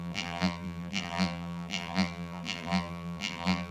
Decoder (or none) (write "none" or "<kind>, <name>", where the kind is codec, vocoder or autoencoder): vocoder, BigVGAN v2